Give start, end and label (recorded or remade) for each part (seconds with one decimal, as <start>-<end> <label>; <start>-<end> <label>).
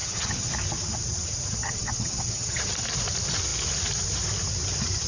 0.0-0.5 remade; 0.5-1.6 recorded; 1.6-2.7 remade; 2.7-5.1 recorded